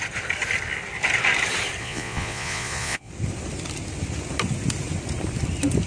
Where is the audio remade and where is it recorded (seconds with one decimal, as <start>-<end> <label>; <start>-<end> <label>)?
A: 0.0-1.8 recorded; 1.8-3.1 remade; 3.1-5.9 recorded